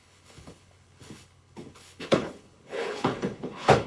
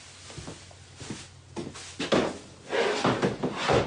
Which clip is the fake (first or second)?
first